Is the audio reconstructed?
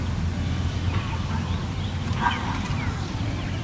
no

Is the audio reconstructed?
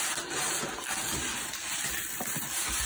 no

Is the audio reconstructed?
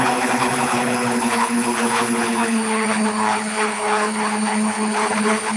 yes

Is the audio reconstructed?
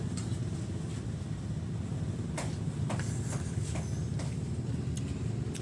no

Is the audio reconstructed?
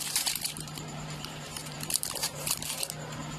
yes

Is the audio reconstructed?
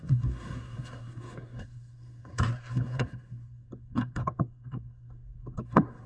yes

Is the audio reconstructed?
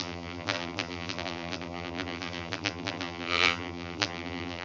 yes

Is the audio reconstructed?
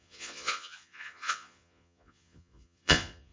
yes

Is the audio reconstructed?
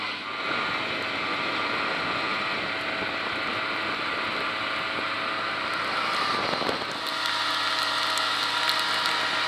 no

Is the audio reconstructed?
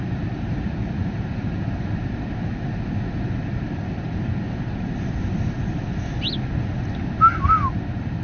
no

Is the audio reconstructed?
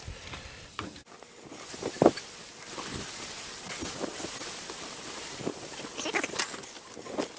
no